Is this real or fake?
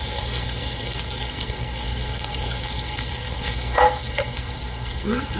fake